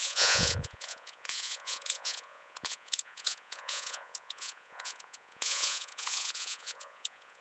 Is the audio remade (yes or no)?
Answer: yes